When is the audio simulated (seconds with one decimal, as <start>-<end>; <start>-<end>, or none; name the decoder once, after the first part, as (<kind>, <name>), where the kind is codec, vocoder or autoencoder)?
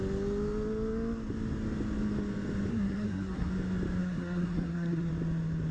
2.7-3.5 (codec, SNAC); 4.0-5.1